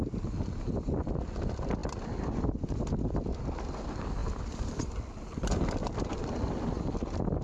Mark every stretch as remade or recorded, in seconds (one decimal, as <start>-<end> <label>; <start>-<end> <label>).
0.0-7.4 recorded